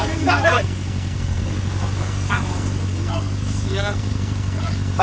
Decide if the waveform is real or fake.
fake